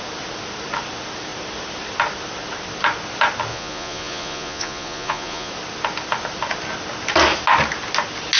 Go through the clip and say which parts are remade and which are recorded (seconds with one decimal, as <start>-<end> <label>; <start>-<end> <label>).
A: 0.0-3.5 recorded; 3.5-5.5 remade; 5.5-8.4 recorded